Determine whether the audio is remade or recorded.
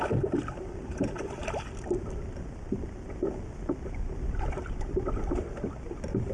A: recorded